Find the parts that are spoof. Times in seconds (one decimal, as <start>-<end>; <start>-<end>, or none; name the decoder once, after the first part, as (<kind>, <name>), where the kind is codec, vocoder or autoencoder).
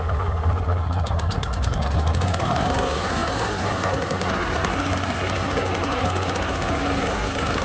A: 0.0-7.6 (codec, SNAC)